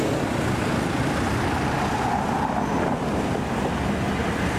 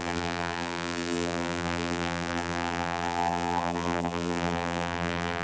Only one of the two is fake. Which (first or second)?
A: second